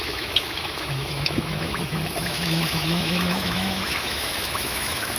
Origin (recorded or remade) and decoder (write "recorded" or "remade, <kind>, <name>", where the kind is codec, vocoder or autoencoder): remade, autoencoder, DAC-VAE